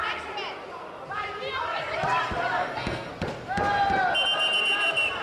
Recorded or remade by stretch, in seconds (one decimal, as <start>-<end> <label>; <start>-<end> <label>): 0.0-2.6 recorded; 2.6-3.1 remade; 3.1-5.2 recorded